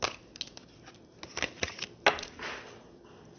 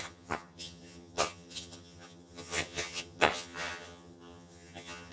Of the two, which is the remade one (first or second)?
second